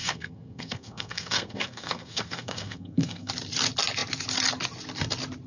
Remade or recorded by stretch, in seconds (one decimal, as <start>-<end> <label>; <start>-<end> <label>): 0.0-3.3 remade; 3.3-5.5 recorded